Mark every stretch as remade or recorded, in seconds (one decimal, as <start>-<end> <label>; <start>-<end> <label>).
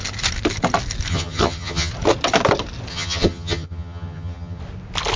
0.0-1.1 recorded; 1.1-1.9 remade; 1.9-2.9 recorded; 2.9-4.6 remade; 4.6-5.2 recorded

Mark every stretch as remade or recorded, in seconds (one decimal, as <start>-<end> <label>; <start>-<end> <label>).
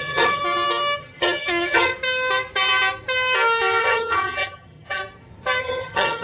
0.0-0.4 remade; 0.4-1.0 recorded; 1.0-1.9 remade; 1.9-3.8 recorded; 3.8-5.0 remade; 5.0-5.6 recorded; 5.6-6.2 remade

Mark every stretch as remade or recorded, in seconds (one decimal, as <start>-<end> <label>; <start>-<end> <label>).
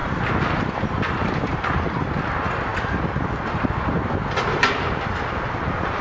0.0-6.0 recorded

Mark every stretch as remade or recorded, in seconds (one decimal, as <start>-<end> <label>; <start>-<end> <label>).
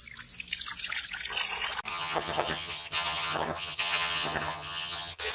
0.0-1.9 recorded; 1.9-5.3 remade